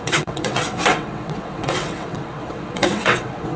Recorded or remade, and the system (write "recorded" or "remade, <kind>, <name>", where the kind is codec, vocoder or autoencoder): remade, vocoder, WaveNeXt